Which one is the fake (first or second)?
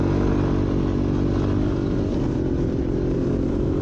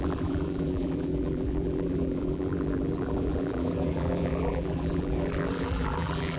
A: second